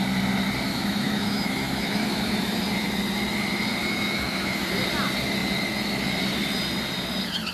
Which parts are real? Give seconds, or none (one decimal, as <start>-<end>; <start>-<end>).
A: 0.0-0.7; 2.6-3.8; 4.7-7.5